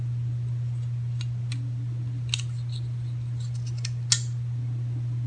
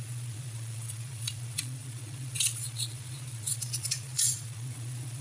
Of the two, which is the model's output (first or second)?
second